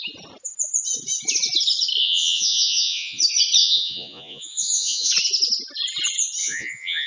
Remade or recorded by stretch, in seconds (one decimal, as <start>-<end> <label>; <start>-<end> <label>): 0.0-2.0 recorded; 2.0-3.2 remade; 3.2-3.6 recorded; 3.6-5.1 remade; 5.1-6.4 recorded; 6.4-7.1 remade